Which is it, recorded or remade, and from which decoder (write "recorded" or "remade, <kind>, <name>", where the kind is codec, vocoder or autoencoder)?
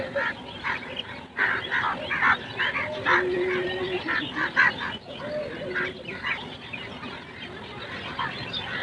recorded